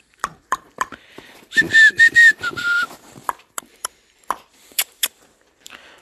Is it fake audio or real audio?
fake